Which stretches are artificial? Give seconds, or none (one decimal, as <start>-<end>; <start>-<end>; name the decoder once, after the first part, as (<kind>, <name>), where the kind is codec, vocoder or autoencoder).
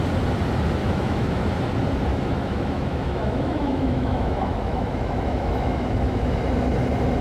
0.8-1.4 (autoencoder, DAC-VAE); 2.1-6.4